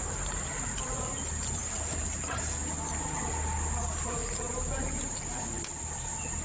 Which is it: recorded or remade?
recorded